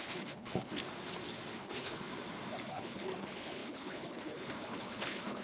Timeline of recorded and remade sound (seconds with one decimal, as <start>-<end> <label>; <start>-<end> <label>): 0.0-0.8 remade; 0.8-1.6 recorded; 1.6-2.1 remade; 2.1-2.7 recorded; 2.7-5.4 remade